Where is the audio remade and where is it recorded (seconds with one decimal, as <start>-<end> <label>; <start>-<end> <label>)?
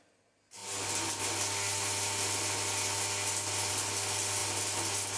0.0-5.2 recorded